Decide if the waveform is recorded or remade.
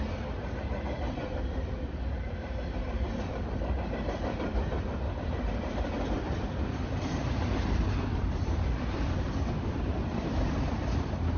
remade